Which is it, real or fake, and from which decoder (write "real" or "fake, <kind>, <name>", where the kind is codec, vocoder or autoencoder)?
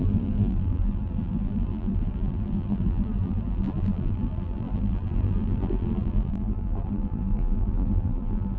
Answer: fake, vocoder, BigVGAN v2